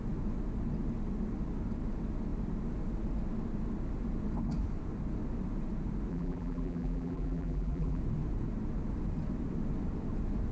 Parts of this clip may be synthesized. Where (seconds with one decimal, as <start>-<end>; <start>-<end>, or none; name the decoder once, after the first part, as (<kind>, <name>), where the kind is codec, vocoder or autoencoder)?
6.1-8.0 (vocoder, BigVGAN v2)